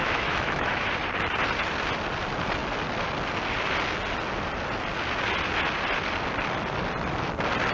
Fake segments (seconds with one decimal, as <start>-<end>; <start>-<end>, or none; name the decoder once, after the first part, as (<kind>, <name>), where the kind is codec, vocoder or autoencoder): 0.0-0.9 (autoencoder, DAC-VAE)